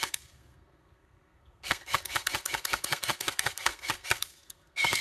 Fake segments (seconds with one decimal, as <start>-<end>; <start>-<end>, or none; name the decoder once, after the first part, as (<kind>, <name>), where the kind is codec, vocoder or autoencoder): 0.0-5.0 (codec, SNAC)